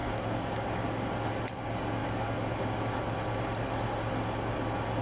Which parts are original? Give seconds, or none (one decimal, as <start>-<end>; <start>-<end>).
1.1-5.0